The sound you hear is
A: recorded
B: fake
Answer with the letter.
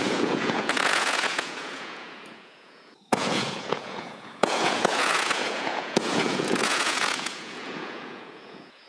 B